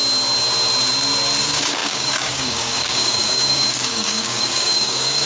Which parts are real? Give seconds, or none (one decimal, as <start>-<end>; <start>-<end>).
0.0-1.4